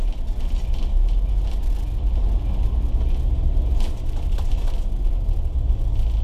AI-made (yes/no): no